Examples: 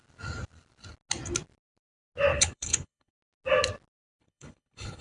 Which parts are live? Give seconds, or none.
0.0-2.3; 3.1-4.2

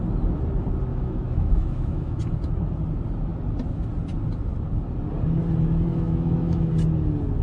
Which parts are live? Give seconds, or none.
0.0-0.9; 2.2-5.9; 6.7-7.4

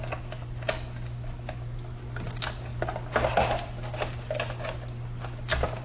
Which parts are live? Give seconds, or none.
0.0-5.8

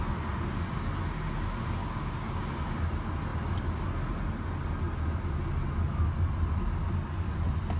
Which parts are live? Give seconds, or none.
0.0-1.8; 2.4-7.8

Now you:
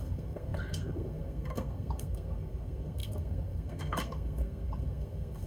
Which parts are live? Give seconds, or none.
none

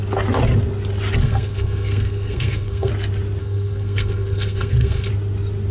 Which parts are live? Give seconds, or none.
0.0-1.2; 2.9-3.4; 5.1-5.7